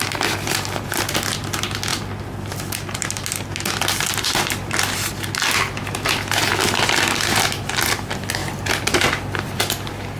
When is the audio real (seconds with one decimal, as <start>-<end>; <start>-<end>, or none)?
0.0-8.4; 9.6-10.2